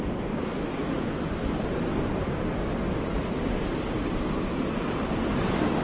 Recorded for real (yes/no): yes